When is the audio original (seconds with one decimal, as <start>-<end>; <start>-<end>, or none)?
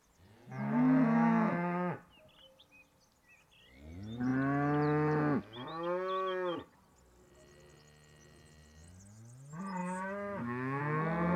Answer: 0.0-9.8; 10.8-11.4